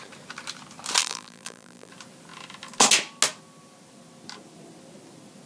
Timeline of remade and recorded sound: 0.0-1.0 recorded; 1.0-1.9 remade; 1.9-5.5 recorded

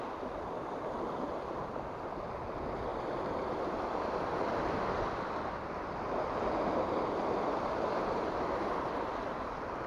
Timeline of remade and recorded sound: 0.0-2.9 recorded; 2.9-3.5 remade; 3.5-9.9 recorded

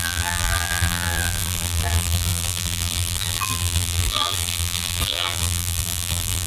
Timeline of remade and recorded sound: 0.0-6.5 remade